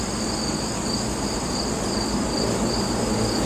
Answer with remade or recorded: recorded